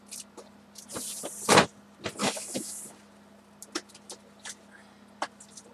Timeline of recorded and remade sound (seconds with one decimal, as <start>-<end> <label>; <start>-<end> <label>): 0.0-2.2 recorded; 2.2-2.8 remade; 2.8-5.7 recorded